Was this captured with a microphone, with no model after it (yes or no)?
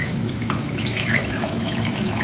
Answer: no